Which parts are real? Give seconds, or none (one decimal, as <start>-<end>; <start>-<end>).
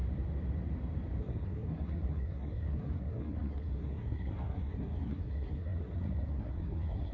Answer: 0.0-1.2